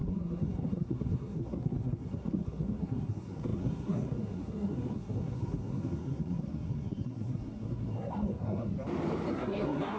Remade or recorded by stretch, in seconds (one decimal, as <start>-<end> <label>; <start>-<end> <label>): 0.0-8.7 remade; 8.7-9.3 recorded; 9.3-10.0 remade